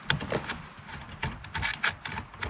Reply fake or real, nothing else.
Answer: real